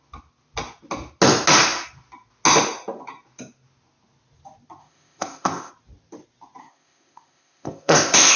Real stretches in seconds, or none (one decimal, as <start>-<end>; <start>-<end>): 0.0-4.8; 5.7-6.6